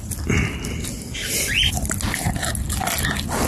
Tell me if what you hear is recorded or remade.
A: recorded